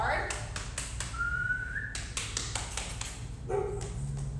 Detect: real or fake real